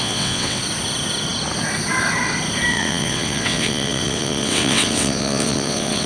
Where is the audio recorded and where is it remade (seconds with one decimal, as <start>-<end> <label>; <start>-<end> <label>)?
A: 0.0-0.6 remade; 0.6-2.7 recorded; 2.7-6.1 remade